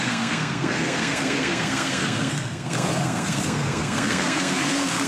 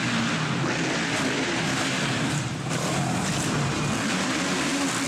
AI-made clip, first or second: first